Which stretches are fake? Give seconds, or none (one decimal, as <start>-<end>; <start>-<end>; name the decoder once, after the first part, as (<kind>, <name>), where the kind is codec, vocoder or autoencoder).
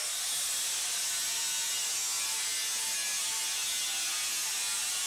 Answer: none